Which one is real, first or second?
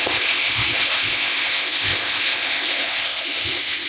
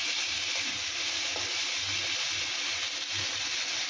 second